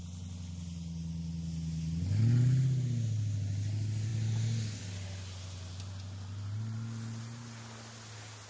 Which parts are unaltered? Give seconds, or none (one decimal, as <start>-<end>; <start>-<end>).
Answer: 0.0-8.5